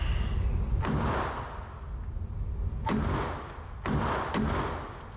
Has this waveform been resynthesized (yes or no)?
no